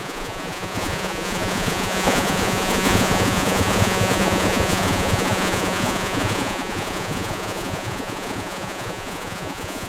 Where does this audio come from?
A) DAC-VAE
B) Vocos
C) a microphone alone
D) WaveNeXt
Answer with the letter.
B